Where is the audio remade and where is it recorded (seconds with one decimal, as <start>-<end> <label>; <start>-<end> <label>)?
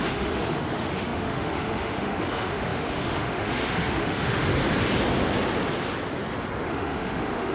0.0-4.5 remade; 4.5-6.7 recorded; 6.7-7.5 remade